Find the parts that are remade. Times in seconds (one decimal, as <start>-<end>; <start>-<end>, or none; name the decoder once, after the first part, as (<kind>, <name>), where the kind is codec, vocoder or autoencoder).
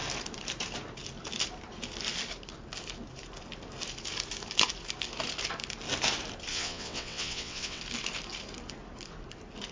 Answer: 6.5-7.8 (vocoder, WaveNeXt)